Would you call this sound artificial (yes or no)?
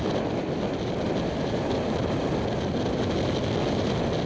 no